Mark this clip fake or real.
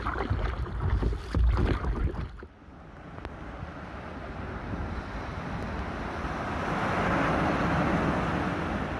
real